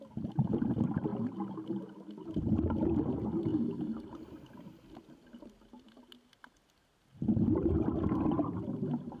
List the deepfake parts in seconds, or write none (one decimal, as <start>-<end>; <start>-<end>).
none